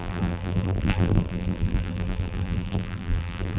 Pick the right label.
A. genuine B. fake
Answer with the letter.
B